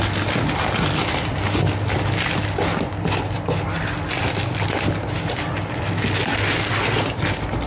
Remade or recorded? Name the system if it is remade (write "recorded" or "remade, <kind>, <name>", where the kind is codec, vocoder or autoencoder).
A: recorded